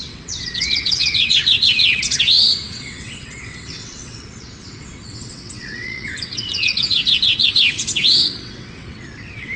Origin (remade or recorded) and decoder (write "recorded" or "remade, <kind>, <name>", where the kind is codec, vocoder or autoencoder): remade, vocoder, WaveNeXt